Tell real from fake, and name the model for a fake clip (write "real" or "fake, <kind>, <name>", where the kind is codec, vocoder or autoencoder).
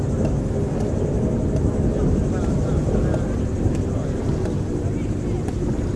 real